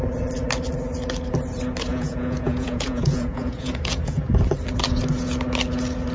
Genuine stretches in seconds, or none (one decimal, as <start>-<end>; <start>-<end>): 0.0-1.9; 4.3-6.1